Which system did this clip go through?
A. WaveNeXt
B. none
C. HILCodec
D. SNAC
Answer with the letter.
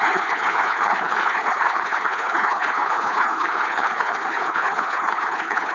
C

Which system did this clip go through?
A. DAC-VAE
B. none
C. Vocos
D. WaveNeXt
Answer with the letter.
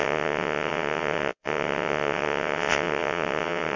D